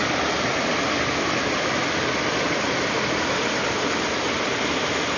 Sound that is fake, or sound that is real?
real